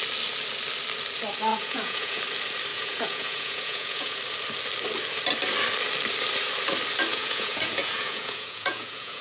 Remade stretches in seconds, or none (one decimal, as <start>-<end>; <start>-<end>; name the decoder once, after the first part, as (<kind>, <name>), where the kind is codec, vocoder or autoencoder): 1.5-2.2 (vocoder, Vocos); 2.7-4.2; 7.1-9.2